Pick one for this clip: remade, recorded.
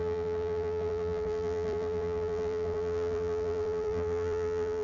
remade